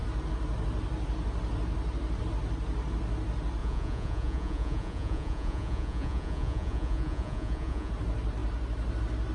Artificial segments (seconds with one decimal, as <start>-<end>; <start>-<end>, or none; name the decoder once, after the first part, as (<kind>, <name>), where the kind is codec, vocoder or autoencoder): 3.6-7.9 (vocoder, Vocos)